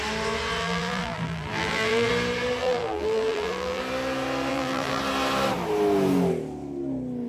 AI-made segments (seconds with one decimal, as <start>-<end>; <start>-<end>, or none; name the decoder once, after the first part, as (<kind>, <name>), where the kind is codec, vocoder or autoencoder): 0.6-2.1 (vocoder, BigVGAN v2); 2.6-3.8; 4.5-5.0